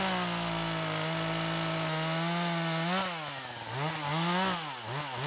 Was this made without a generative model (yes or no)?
yes